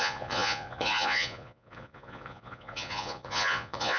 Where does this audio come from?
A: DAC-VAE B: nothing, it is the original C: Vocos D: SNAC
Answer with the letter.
C